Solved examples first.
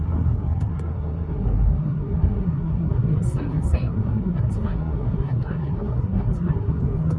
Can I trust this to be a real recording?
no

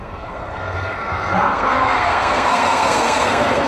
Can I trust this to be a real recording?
no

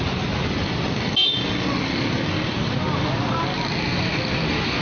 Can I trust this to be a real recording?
yes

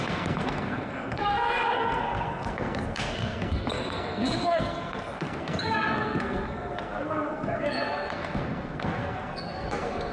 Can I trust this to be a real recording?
no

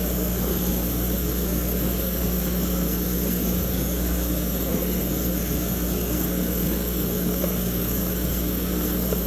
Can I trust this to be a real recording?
no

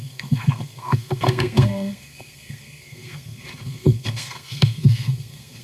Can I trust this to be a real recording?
no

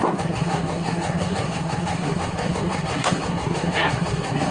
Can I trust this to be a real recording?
no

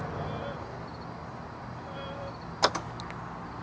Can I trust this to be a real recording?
yes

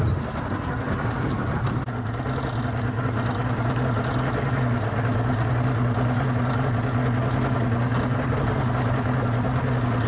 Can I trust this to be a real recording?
yes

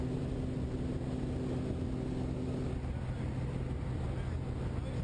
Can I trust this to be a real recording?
yes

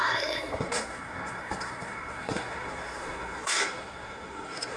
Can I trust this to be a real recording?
no